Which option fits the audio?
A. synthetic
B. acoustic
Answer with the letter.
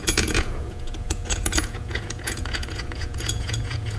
A